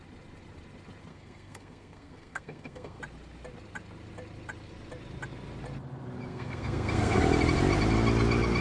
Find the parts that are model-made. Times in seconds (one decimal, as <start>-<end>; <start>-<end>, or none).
1.1-3.0; 6.3-7.2